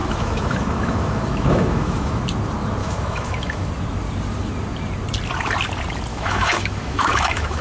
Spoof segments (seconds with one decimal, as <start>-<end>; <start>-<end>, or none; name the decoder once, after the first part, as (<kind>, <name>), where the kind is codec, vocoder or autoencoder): 0.0-2.2 (autoencoder, DAC-VAE); 2.8-3.7; 6.1-7.6